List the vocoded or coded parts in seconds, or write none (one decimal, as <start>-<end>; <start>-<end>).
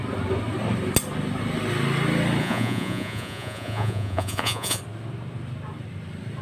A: 2.4-4.8